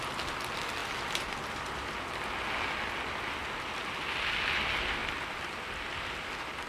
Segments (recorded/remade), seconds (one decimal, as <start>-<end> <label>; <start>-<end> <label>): 0.0-6.7 recorded